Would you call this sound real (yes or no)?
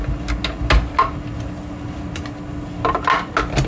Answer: yes